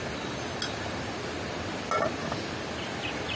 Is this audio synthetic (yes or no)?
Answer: no